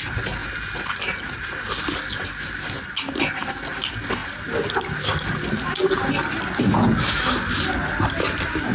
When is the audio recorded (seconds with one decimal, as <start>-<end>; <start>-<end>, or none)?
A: 0.0-8.7